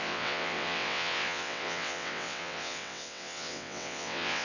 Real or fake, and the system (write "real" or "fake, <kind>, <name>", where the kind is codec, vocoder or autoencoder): fake, vocoder, WaveNeXt